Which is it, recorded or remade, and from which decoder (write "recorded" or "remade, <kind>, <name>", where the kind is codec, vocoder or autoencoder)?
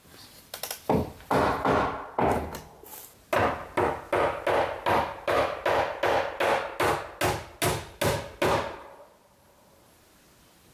recorded